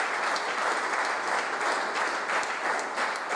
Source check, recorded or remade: recorded